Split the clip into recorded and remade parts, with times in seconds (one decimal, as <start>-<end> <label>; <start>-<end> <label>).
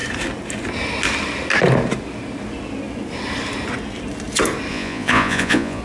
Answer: 0.0-4.7 recorded; 4.7-5.8 remade